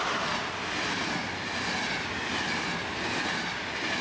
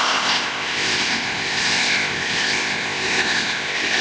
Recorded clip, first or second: first